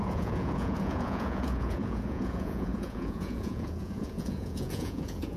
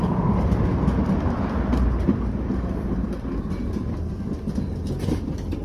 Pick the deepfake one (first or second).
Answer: first